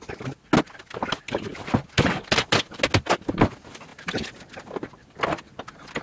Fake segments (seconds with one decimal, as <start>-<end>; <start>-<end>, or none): none